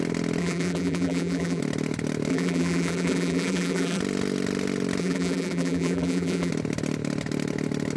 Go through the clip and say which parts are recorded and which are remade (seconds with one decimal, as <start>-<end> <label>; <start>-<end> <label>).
0.0-0.4 recorded; 0.4-1.6 remade; 1.6-2.3 recorded; 2.3-4.0 remade; 4.0-5.0 recorded; 5.0-6.5 remade; 6.5-8.0 recorded